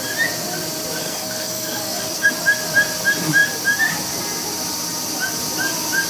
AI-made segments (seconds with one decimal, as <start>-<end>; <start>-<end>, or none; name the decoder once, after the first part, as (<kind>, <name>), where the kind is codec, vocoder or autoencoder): 1.0-2.3 (codec, SNAC)